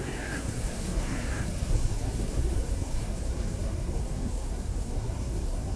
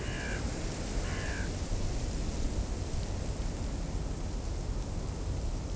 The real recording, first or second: second